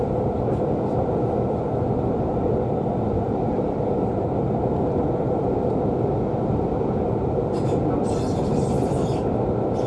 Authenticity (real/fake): real